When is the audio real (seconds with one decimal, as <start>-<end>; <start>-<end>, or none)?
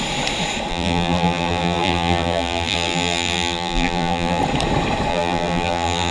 0.0-0.7; 4.4-5.1